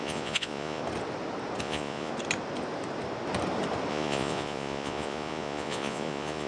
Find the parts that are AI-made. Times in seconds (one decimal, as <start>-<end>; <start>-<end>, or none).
0.0-0.8; 1.6-2.1; 3.9-6.5